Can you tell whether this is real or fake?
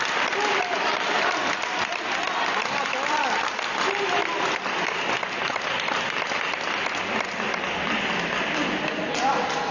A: real